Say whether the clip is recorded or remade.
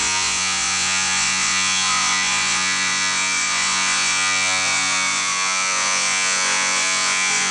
remade